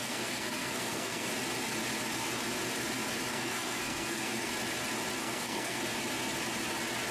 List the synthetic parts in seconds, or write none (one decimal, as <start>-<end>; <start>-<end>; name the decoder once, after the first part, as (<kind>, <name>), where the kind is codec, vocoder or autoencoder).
0.0-1.3 (codec, SNAC); 3.3-4.5; 5.2-5.8